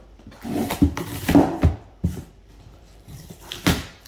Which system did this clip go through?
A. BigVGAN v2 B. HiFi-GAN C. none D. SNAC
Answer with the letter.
A